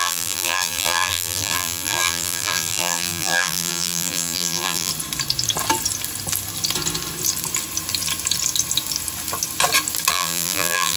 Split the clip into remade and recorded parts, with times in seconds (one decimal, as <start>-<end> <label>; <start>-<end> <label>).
0.0-4.9 remade; 4.9-10.1 recorded; 10.1-11.0 remade